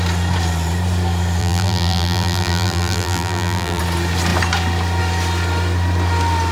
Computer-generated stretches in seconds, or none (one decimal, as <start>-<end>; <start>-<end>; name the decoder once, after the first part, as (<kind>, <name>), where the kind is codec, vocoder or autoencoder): 1.4-3.8 (vocoder, BigVGAN v2)